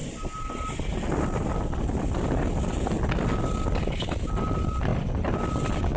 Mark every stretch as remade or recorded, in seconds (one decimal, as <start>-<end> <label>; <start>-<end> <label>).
0.0-6.0 recorded